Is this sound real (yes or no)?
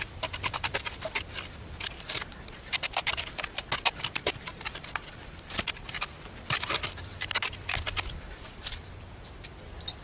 yes